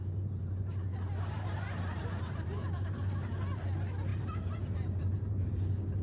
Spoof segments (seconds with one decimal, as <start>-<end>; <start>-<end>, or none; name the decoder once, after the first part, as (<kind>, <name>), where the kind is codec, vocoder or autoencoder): 0.0-3.6 (vocoder, BigVGAN v2); 4.1-5.5